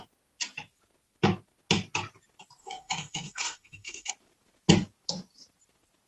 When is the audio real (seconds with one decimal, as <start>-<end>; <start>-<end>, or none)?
0.0-2.6; 4.1-6.1